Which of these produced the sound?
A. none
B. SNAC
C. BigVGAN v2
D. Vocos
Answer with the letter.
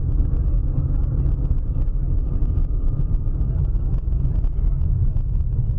A